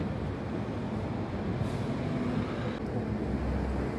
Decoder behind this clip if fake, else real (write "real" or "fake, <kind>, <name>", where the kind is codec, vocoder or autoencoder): real